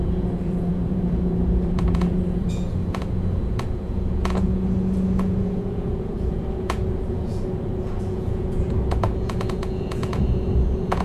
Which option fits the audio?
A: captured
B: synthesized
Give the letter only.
B